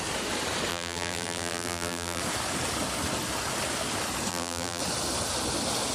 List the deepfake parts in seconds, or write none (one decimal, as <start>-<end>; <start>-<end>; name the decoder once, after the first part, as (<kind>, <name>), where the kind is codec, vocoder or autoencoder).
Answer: 0.7-2.2 (vocoder, BigVGAN v2); 4.3-4.8